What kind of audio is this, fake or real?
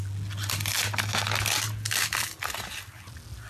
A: real